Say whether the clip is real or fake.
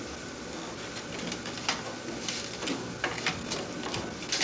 real